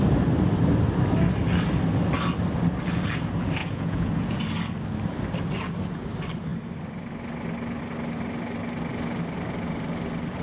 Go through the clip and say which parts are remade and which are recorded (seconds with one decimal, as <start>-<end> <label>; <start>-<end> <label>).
0.0-3.6 recorded; 3.6-4.4 remade; 4.4-10.4 recorded